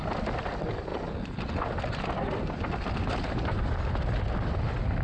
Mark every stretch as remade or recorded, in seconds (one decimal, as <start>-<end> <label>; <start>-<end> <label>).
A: 0.0-5.0 recorded

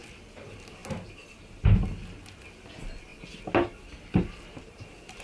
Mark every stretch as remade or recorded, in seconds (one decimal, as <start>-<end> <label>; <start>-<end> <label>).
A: 0.0-5.2 recorded

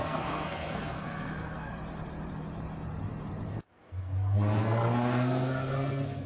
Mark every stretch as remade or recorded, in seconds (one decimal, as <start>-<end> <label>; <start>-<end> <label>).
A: 0.0-1.7 remade; 1.7-3.5 recorded; 3.5-6.3 remade

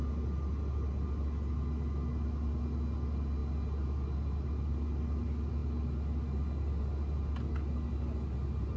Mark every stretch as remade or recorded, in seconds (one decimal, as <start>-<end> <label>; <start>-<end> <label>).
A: 0.0-8.8 recorded

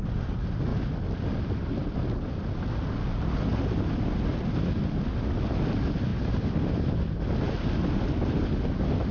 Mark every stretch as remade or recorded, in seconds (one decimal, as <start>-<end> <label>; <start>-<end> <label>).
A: 0.0-9.1 recorded

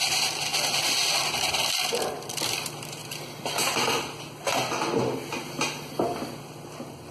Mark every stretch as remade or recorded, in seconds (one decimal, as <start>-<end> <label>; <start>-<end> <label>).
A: 0.0-7.1 recorded